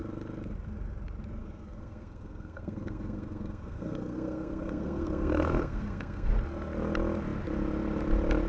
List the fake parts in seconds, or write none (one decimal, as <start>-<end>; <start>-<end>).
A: 1.4-6.3